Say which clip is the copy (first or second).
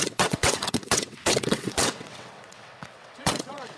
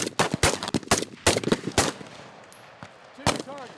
first